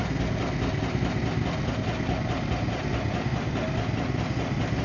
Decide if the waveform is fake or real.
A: real